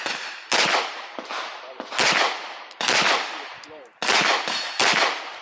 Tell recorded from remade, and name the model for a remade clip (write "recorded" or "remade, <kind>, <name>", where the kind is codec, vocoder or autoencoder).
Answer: recorded